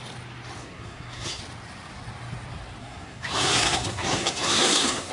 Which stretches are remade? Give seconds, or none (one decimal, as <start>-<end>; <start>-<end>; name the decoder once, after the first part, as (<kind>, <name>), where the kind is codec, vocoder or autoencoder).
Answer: 0.6-1.4 (codec, SNAC); 2.8-5.1